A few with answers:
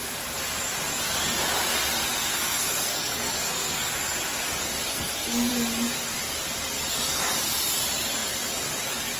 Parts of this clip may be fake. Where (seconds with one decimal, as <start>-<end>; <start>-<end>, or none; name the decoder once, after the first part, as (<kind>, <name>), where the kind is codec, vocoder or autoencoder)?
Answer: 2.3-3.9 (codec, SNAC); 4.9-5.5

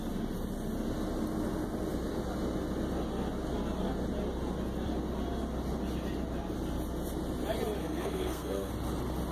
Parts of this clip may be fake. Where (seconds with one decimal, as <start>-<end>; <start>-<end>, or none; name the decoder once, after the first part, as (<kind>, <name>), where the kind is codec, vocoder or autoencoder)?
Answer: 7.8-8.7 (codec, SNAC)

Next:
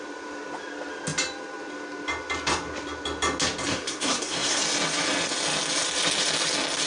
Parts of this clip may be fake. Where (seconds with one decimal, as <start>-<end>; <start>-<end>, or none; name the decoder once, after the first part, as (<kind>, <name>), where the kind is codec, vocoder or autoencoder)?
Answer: 3.7-4.6 (codec, SNAC)

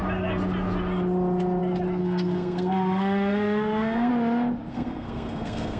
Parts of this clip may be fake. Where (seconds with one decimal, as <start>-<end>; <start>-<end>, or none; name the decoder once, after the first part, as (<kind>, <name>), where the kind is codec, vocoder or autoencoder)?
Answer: 2.0-4.1 (codec, SNAC); 4.7-5.8